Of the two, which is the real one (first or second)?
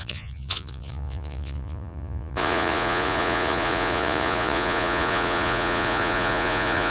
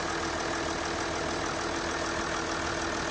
second